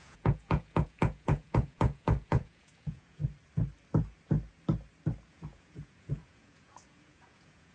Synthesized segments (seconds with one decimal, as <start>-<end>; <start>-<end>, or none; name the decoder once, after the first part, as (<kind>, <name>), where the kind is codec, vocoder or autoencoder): 0.0-3.2 (vocoder, Vocos); 5.3-7.7